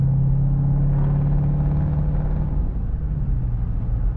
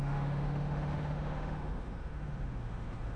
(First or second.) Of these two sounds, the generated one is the second